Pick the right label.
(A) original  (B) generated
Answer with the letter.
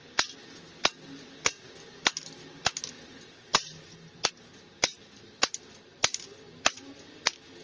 A